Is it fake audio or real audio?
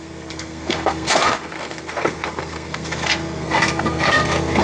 fake